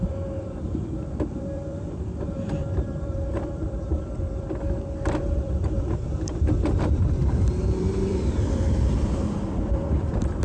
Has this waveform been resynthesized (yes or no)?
yes